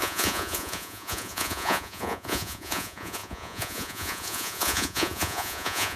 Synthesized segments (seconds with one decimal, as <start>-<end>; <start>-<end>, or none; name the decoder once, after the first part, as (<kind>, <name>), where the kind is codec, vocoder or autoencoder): 0.0-6.0 (vocoder, Vocos)